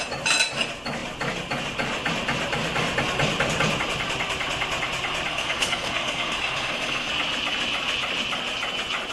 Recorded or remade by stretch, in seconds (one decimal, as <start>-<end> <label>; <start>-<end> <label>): 0.0-5.3 recorded; 5.3-7.1 remade; 7.1-9.1 recorded